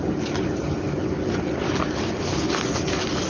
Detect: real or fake real